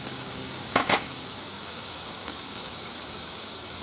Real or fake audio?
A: fake